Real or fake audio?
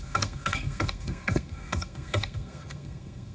fake